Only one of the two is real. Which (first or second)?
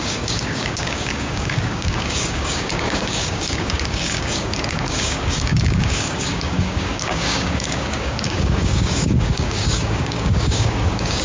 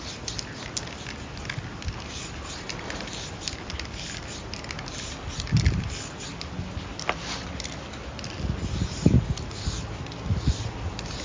second